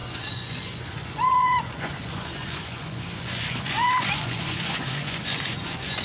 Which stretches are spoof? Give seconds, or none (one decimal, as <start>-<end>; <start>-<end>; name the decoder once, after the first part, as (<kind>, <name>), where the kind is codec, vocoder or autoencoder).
0.0-6.0 (vocoder, Vocos)